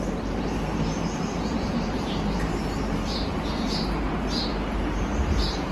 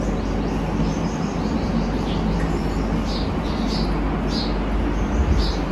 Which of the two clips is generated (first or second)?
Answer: first